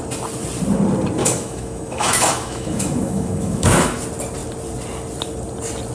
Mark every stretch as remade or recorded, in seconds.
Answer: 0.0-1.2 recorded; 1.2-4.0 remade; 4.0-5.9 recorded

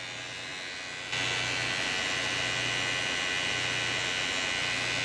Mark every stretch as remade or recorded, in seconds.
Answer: 0.0-5.0 recorded